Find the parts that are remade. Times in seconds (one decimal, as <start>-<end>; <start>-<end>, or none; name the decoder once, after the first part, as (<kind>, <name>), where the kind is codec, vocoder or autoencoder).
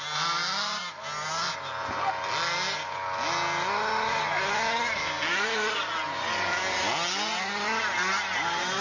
none